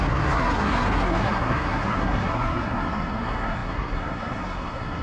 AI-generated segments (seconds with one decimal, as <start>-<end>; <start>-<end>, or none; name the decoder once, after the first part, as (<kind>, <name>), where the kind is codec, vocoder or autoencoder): 0.0-5.0 (codec, SNAC)